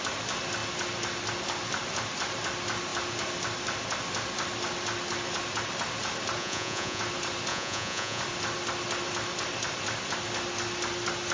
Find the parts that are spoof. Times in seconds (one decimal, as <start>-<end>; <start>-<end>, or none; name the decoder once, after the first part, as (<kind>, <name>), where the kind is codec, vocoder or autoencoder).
6.4-7.0 (vocoder, Vocos); 7.5-8.2